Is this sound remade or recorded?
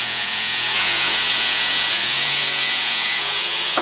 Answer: remade